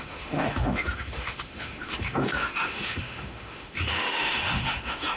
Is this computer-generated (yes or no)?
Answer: yes